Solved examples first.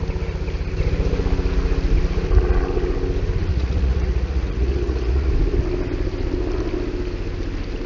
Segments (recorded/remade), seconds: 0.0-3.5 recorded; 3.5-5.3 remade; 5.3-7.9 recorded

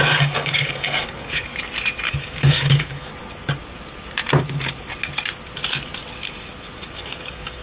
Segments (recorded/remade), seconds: 0.0-1.5 remade; 1.5-2.1 recorded; 2.1-3.1 remade; 3.1-6.9 recorded; 6.9-7.6 remade

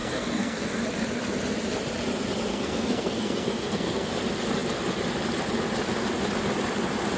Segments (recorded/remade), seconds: 0.0-0.8 remade; 0.8-2.5 recorded; 2.5-4.1 remade; 4.1-7.2 recorded

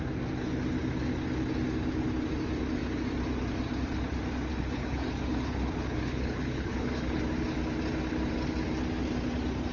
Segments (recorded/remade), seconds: 0.0-4.5 recorded; 4.5-7.2 remade; 7.2-9.7 recorded

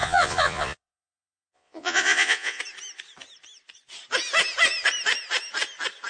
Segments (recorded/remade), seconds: 0.0-2.6 remade; 2.6-6.1 recorded

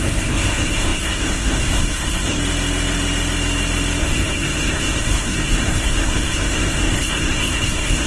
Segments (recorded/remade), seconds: 0.0-2.4 remade; 2.4-4.0 recorded; 4.0-8.1 remade

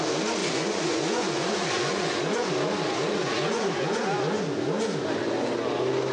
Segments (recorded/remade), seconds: 0.0-0.4 recorded; 0.4-2.5 remade; 2.5-3.2 recorded; 3.2-4.0 remade; 4.0-6.1 recorded

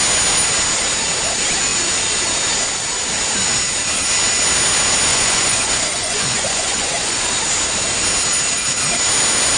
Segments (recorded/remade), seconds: 0.0-5.1 recorded; 5.1-7.3 remade; 7.3-9.6 recorded